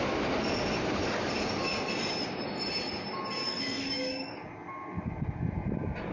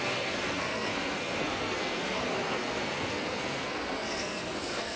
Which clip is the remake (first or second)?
second